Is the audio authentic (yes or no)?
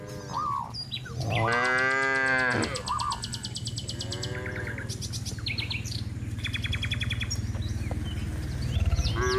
yes